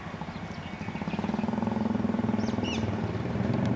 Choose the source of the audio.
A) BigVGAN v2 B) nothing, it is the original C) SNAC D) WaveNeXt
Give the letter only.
B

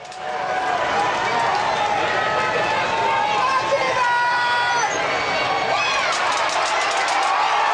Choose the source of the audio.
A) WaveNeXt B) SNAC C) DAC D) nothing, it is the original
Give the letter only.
D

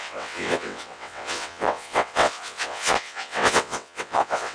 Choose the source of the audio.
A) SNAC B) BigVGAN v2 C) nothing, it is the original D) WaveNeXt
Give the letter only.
D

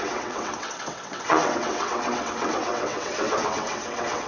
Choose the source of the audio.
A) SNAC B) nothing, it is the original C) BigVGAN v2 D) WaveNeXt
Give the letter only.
D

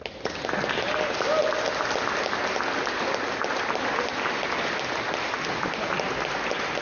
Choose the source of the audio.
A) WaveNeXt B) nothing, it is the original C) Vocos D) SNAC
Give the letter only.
B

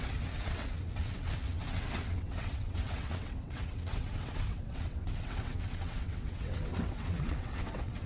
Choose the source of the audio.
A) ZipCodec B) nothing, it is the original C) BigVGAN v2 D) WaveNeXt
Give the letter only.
D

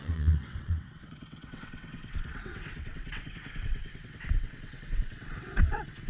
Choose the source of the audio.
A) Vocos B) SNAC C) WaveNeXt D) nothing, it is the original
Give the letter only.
C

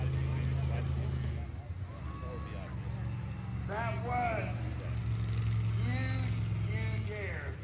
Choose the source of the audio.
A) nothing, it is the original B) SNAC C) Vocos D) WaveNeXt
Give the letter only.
A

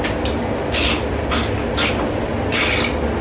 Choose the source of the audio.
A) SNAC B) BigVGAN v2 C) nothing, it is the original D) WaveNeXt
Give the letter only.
C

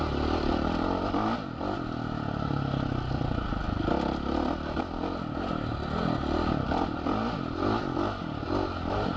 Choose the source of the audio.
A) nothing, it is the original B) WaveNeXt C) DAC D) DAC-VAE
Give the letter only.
A